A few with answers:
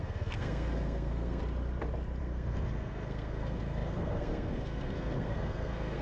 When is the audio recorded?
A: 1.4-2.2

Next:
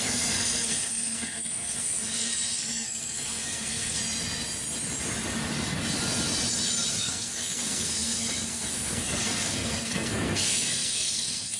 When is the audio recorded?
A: 4.0-6.9

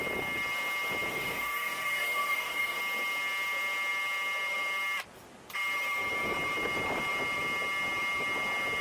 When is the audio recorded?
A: 0.0-1.1; 2.8-8.8

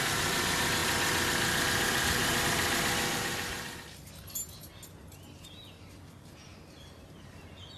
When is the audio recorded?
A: 0.0-7.8

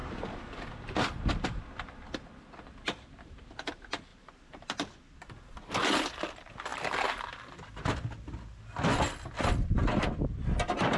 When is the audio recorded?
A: 3.5-4.1; 5.0-6.7; 8.0-11.0

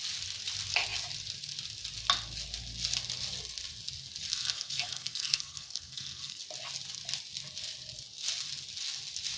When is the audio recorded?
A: 0.0-4.3; 6.4-9.4